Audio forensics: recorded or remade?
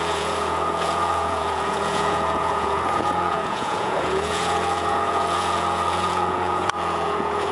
remade